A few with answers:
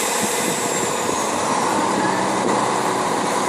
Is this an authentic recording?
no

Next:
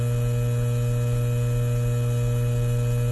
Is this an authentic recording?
yes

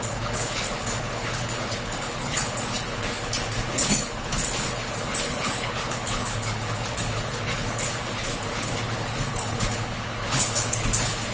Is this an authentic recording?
no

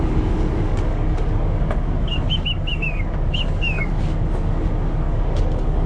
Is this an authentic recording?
no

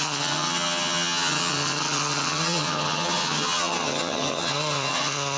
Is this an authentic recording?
no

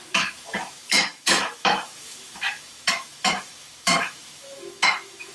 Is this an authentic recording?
no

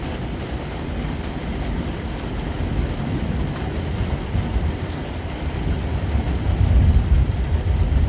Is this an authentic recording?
yes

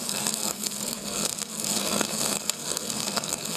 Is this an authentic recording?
no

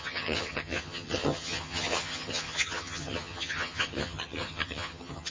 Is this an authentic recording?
no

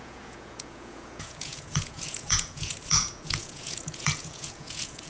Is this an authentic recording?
no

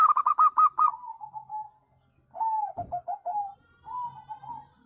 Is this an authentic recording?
yes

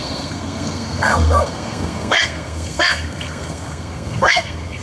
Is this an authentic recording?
no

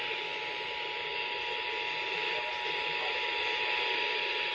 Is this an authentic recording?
no